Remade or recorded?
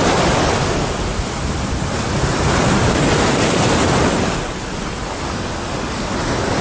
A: recorded